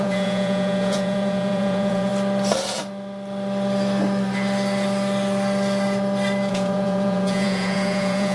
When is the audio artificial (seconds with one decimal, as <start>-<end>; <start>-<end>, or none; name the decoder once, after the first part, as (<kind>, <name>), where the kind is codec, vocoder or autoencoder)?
0.0-2.1 (vocoder, Vocos); 6.5-8.3